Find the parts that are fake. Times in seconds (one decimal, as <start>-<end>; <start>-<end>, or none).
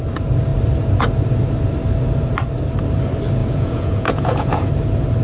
3.4-4.7